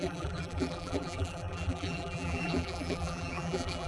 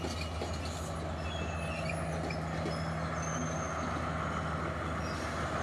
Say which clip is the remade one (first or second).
first